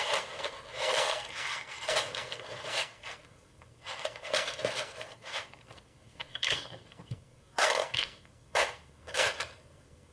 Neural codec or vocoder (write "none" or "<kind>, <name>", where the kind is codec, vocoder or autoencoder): codec, SNAC